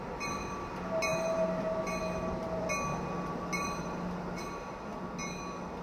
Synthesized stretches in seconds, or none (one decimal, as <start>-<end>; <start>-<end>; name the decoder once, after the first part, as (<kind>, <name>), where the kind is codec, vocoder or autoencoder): none